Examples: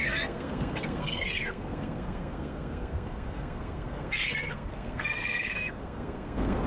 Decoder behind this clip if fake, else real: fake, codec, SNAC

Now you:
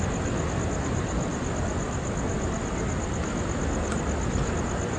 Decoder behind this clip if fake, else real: real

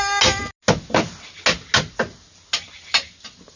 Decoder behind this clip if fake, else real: real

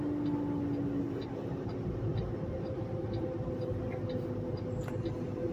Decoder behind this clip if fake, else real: real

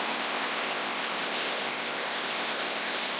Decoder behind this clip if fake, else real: fake, codec, ZipCodec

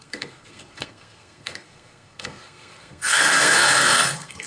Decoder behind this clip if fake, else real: fake, codec, SNAC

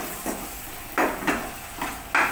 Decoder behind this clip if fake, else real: real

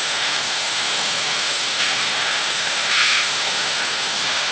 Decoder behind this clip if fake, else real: fake, autoencoder, DAC-VAE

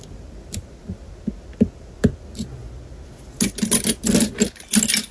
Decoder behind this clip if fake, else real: real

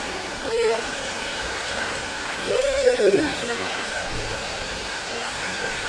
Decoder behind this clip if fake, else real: fake, codec, SNAC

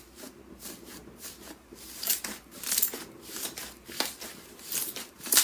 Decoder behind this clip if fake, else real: fake, vocoder, BigVGAN v2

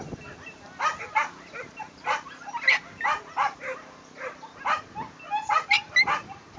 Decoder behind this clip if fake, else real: real